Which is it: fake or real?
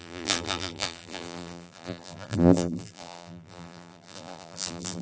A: fake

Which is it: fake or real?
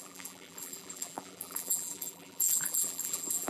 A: fake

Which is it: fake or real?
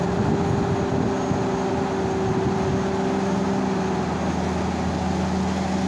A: real